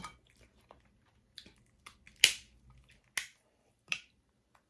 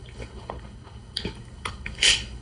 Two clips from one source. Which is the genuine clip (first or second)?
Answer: first